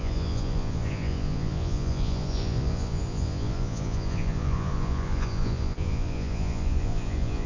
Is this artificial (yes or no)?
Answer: yes